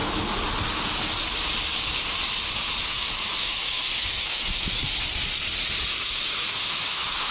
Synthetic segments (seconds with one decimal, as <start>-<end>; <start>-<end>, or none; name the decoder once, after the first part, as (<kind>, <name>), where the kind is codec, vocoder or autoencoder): 2.8-4.8 (autoencoder, DAC-VAE); 6.0-7.3